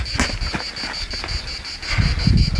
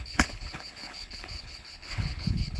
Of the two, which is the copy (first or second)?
second